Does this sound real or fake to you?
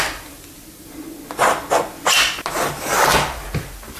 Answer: real